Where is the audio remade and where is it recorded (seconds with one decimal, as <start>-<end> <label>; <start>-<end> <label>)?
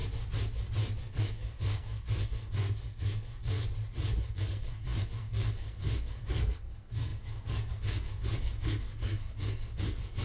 0.0-1.0 recorded; 1.0-3.6 remade; 3.6-4.3 recorded; 4.3-10.2 remade